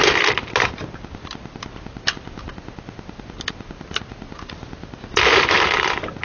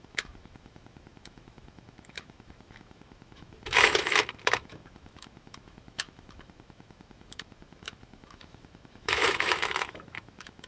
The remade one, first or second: second